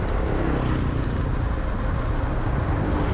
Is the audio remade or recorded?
recorded